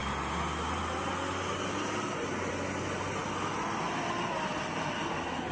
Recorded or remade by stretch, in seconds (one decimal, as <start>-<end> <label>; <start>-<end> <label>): 0.0-5.5 recorded